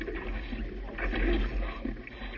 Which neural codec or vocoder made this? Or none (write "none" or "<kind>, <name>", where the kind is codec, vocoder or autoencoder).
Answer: none